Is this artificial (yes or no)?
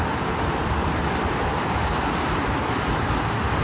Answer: no